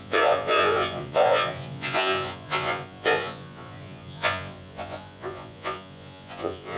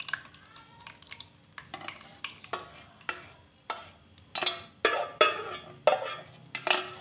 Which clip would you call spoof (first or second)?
first